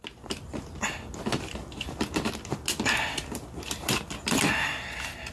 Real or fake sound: real